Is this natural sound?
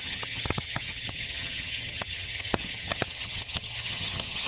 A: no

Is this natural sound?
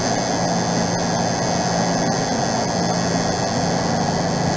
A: yes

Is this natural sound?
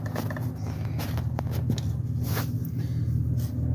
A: yes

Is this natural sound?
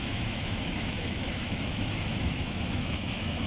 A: no